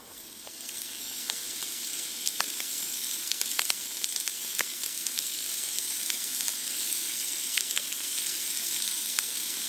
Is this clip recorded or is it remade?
remade